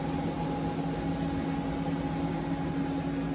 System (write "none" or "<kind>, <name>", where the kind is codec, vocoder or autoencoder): none